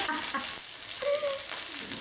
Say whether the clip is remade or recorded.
recorded